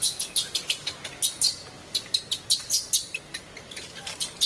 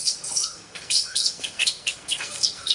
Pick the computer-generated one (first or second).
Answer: second